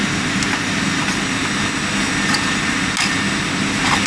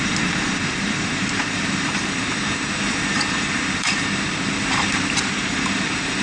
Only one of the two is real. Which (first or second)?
first